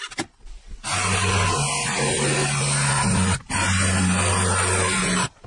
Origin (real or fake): real